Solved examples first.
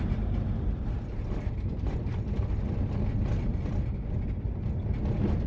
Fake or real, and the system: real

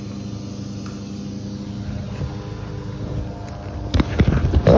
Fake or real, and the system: real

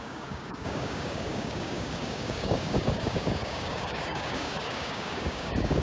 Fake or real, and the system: fake, codec, DAC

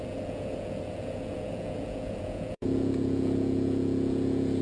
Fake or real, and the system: fake, vocoder, Vocos